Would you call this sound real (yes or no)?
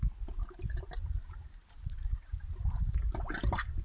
yes